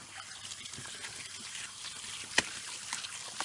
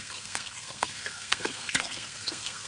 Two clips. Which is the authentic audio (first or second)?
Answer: first